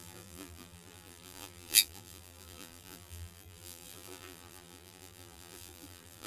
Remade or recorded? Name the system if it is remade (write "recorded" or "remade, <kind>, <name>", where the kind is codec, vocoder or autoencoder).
remade, vocoder, BigVGAN v2